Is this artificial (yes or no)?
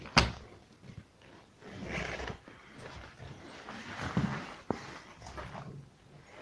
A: no